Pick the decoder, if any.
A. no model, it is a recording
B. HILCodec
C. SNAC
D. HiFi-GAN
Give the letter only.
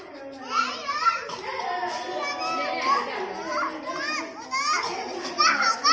A